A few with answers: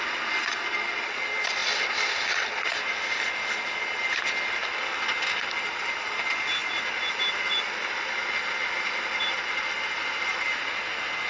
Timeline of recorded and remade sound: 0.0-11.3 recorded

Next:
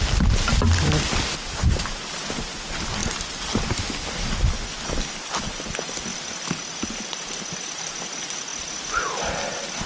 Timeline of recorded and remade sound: 0.0-9.9 recorded

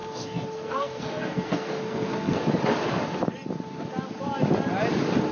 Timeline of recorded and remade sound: 0.0-2.4 remade; 2.4-5.3 recorded

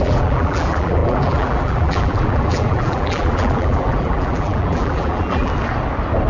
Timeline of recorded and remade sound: 0.0-5.5 remade; 5.5-6.3 recorded

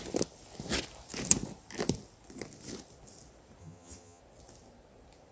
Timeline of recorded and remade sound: 0.0-3.6 recorded; 3.6-4.2 remade; 4.2-5.3 recorded

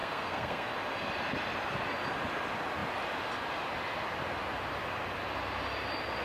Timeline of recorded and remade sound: 0.0-0.7 remade; 0.7-6.2 recorded